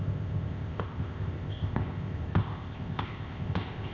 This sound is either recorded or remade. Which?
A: remade